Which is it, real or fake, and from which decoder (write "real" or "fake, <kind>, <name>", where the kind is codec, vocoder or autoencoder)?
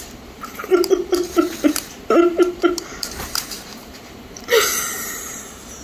fake, vocoder, BigVGAN v2